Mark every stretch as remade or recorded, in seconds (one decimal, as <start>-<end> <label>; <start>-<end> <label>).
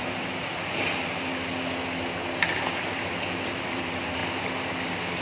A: 0.0-1.3 remade; 1.3-2.6 recorded; 2.6-4.2 remade; 4.2-5.2 recorded